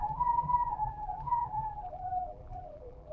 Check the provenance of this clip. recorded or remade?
remade